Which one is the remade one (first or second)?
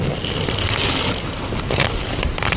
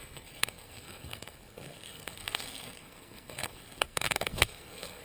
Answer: second